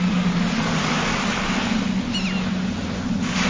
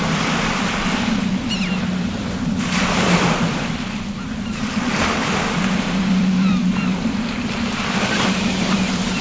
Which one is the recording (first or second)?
first